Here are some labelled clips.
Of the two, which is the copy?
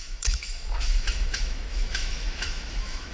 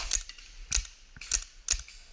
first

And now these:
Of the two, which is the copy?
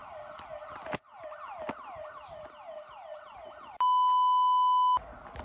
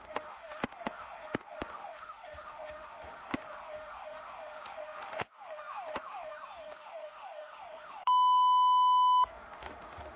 second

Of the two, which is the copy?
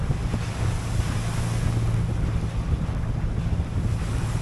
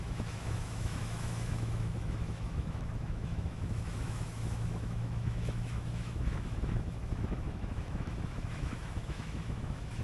second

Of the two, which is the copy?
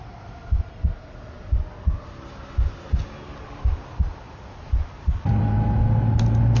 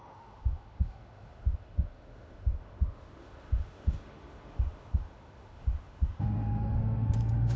second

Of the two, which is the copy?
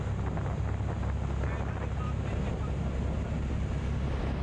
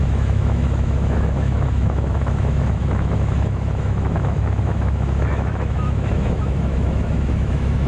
second